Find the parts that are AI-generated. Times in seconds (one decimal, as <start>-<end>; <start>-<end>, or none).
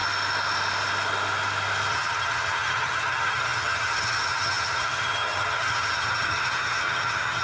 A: 1.9-7.4